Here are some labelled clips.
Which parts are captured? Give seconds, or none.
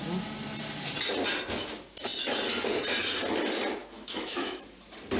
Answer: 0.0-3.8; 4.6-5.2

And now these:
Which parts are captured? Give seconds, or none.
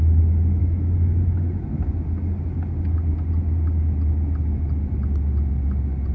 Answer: 0.0-0.6; 1.6-6.1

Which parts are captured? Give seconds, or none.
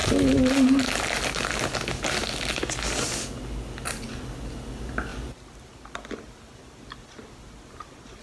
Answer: 0.0-8.2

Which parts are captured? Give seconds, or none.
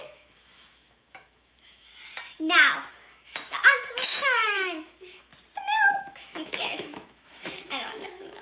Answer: 1.9-2.9; 5.3-6.0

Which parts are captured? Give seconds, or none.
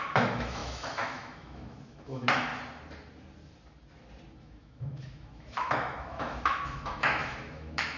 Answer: 2.5-4.4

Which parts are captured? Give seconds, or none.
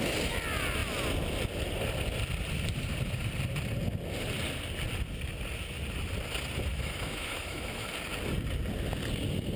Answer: 0.0-6.7; 7.9-9.6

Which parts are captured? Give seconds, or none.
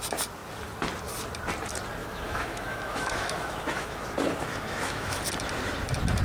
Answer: 0.0-2.0; 4.0-4.5; 5.2-6.2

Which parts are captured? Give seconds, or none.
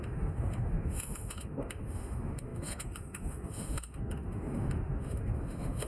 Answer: none